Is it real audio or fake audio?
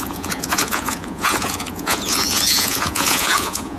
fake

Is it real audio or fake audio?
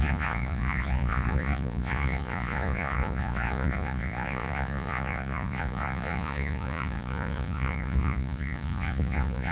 fake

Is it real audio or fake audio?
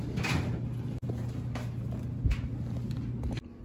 real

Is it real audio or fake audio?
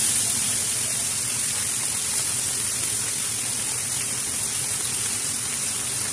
real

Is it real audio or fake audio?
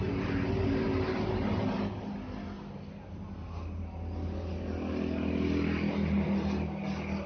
real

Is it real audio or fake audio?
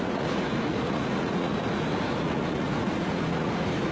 fake